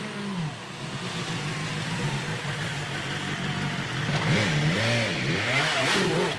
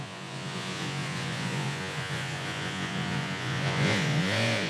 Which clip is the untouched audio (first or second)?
first